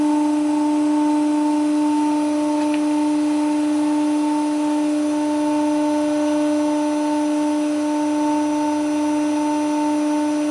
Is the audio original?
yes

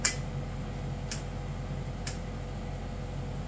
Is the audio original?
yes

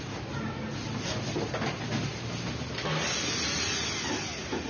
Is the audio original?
yes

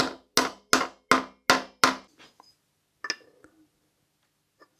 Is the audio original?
yes